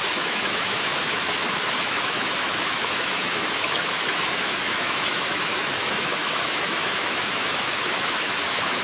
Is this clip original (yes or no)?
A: no